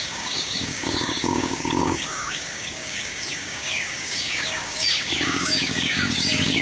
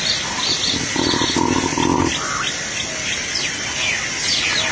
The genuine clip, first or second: second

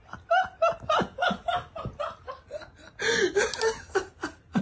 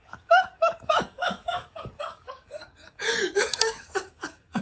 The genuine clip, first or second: first